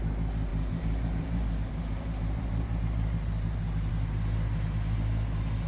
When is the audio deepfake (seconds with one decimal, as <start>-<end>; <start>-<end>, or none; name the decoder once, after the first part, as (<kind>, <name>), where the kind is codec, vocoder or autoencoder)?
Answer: 0.5-3.9 (vocoder, BigVGAN v2)